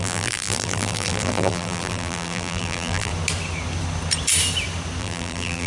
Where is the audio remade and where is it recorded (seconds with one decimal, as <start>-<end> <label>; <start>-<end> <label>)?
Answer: 0.0-3.1 remade; 3.1-5.0 recorded; 5.0-5.7 remade